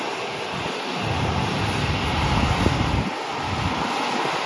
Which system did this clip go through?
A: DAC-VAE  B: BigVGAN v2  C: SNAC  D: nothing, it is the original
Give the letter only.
D